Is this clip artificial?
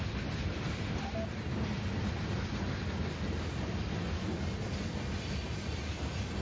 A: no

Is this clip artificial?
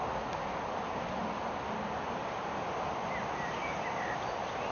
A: no